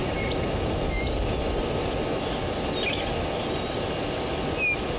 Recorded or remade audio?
recorded